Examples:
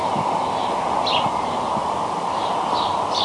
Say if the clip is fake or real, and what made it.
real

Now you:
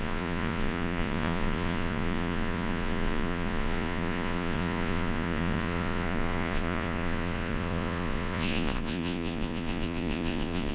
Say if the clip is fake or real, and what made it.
fake, vocoder, Vocos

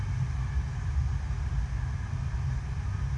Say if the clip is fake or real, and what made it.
real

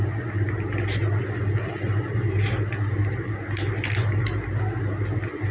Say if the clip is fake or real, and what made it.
real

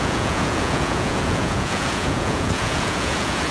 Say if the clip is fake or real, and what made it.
fake, vocoder, Vocos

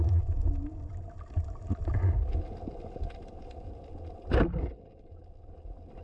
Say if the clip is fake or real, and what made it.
real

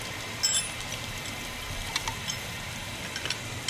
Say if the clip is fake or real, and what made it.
real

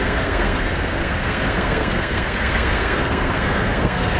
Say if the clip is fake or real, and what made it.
fake, codec, SNAC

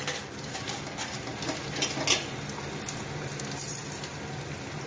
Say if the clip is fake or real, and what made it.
real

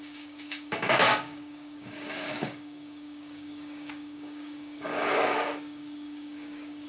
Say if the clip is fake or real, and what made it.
fake, codec, DAC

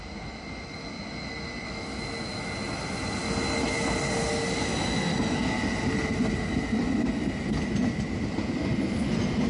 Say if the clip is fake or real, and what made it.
real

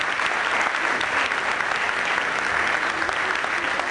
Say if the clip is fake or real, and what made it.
real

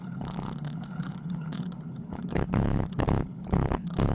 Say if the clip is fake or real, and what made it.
fake, codec, HILCodec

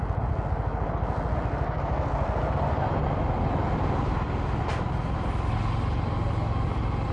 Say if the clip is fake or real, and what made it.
real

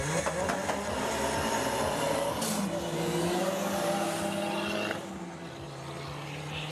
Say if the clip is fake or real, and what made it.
real